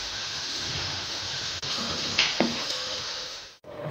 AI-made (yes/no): yes